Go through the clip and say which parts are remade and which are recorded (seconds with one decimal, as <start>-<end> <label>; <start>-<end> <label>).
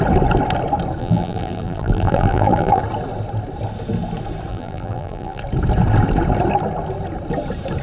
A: 0.0-1.0 recorded; 1.0-2.8 remade; 2.8-4.5 recorded; 4.5-5.4 remade; 5.4-7.8 recorded